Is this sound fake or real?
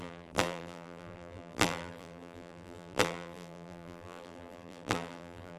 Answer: fake